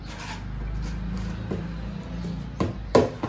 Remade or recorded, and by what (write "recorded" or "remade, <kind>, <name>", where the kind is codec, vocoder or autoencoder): recorded